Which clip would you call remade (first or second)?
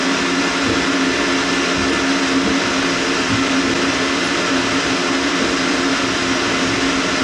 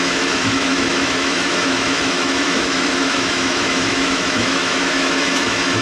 second